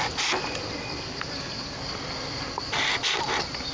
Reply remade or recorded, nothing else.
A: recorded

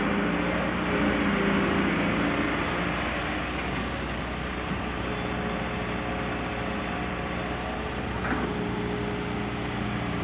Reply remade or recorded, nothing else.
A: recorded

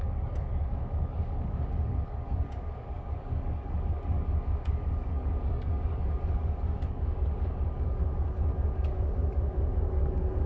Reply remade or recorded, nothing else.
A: remade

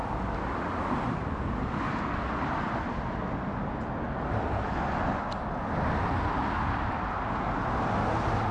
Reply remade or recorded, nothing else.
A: recorded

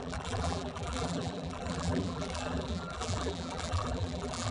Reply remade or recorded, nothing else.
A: remade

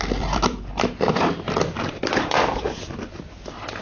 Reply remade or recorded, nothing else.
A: remade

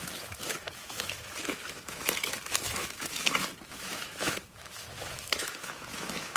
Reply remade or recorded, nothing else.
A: remade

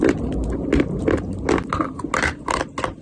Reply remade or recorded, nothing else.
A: recorded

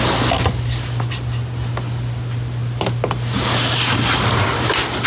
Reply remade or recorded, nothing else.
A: recorded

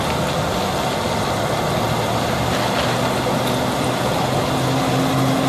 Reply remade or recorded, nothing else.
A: recorded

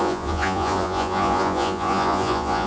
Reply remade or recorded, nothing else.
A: remade